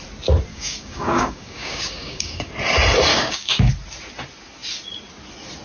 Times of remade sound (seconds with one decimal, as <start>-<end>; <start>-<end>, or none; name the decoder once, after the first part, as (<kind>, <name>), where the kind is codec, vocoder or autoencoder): 0.5-2.5 (codec, DAC); 3.1-3.7

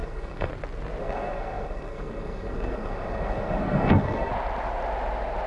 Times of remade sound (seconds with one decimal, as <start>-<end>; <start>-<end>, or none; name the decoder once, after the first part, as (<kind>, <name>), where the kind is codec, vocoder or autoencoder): 0.0-0.5 (codec, SNAC); 1.0-4.3

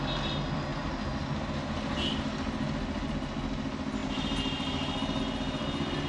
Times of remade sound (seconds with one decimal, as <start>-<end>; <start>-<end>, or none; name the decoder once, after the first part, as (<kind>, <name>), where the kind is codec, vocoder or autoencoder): none

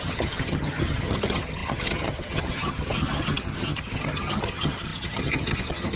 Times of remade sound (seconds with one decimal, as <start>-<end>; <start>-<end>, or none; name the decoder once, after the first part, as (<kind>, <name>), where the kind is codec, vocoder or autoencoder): 0.0-6.0 (vocoder, HiFi-GAN)

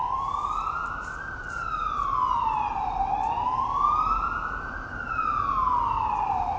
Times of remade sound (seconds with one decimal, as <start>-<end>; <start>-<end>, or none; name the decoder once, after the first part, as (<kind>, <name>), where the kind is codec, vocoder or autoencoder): none

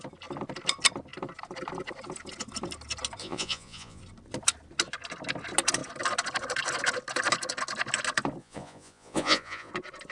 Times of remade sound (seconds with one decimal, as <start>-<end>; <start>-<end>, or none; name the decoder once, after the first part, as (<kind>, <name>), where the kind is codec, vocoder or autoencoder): 3.2-4.0 (vocoder, Vocos); 8.4-9.7

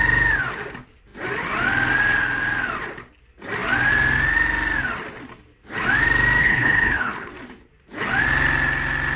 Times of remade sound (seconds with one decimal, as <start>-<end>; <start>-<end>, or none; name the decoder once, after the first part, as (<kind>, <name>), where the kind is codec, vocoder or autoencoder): 6.4-7.3 (codec, HILCodec)